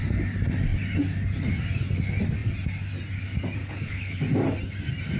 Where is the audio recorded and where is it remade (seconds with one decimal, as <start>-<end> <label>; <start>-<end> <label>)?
0.0-3.6 recorded; 3.6-4.2 remade; 4.2-5.2 recorded